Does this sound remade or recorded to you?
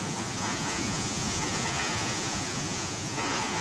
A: remade